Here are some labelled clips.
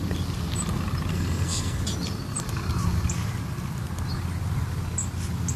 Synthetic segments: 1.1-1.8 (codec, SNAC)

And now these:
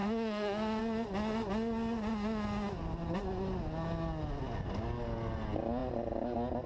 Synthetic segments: 0.0-0.8 (autoencoder, DAC-VAE)

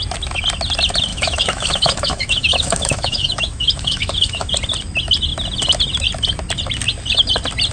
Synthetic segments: 1.1-4.5 (autoencoder, DAC-VAE)

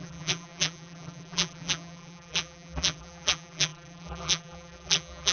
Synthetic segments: 0.0-5.3 (vocoder, BigVGAN v2)

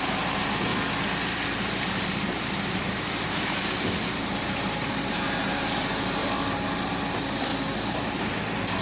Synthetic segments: 0.0-0.7 (vocoder, BigVGAN v2); 1.5-6.2; 7.1-7.5